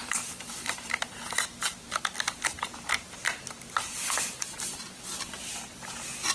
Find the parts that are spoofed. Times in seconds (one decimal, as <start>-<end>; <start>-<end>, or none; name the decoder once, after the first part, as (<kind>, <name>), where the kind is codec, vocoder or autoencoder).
0.0-1.0 (vocoder, BigVGAN v2); 3.9-5.6